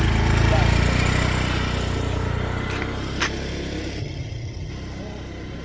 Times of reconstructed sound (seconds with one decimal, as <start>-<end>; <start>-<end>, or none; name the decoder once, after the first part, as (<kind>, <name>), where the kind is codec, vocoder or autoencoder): 4.0-4.7 (vocoder, HiFi-GAN)